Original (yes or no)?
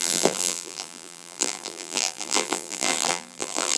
no